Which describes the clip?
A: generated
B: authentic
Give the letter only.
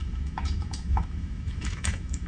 A